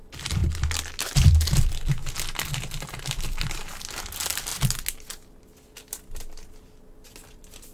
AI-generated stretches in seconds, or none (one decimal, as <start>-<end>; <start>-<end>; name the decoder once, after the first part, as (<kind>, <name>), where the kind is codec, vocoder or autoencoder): 0.0-0.4 (vocoder, BigVGAN v2); 1.0-2.0; 3.0-3.6; 4.1-4.5; 6.7-7.7